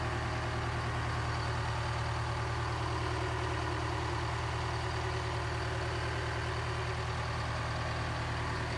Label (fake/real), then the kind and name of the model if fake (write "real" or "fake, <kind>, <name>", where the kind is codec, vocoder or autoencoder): real